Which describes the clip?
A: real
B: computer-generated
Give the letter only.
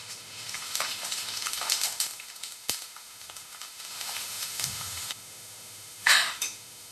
B